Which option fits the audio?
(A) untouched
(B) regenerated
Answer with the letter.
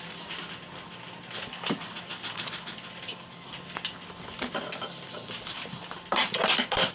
A